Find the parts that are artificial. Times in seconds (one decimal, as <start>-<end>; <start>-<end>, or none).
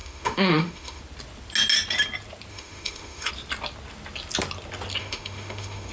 0.0-1.0; 2.5-3.3; 5.0-5.9